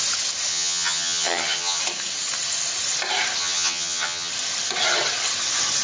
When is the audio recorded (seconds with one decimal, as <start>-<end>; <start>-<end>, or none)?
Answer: 0.0-0.5; 1.8-3.4; 4.3-5.8